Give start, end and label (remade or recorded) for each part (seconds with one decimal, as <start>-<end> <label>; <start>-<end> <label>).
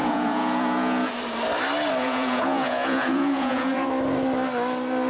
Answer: 0.0-1.1 remade; 1.1-2.0 recorded; 2.0-3.9 remade; 3.9-5.1 recorded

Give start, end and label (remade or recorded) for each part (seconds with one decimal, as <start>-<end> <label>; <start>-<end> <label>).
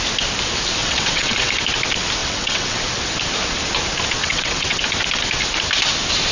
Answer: 0.0-0.8 recorded; 0.8-1.5 remade; 1.5-2.2 recorded; 2.2-2.8 remade; 2.8-4.2 recorded; 4.2-4.8 remade; 4.8-6.3 recorded